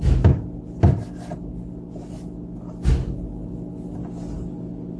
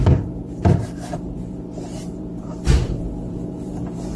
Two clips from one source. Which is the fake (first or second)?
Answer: second